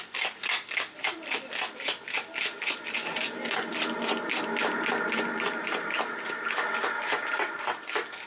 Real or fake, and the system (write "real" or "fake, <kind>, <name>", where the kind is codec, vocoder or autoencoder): real